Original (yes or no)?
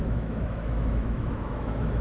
no